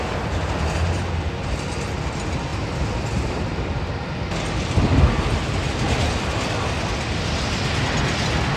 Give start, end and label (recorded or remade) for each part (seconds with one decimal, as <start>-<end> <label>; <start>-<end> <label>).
0.0-8.6 recorded